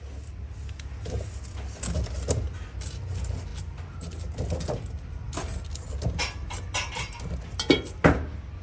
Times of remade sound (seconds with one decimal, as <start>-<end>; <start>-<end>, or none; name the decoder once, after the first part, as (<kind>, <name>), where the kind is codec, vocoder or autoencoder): none